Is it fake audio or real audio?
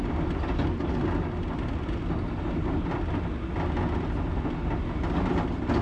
real